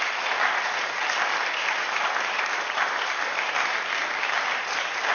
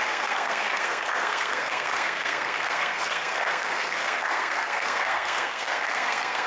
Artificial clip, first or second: second